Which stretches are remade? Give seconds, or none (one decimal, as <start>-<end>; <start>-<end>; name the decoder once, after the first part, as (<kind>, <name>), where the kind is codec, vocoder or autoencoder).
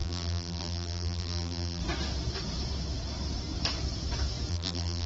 0.0-1.8 (vocoder, BigVGAN v2); 4.5-5.1